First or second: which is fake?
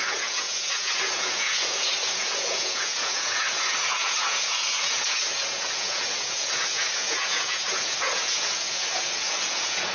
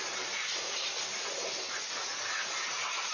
first